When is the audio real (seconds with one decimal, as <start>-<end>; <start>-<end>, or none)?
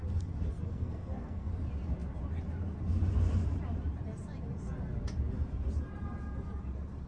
0.0-0.5; 1.5-7.1